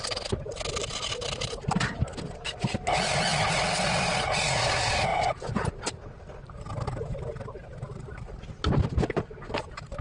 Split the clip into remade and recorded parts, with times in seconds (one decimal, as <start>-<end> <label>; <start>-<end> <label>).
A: 0.0-10.0 recorded